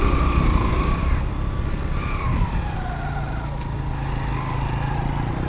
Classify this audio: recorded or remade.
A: recorded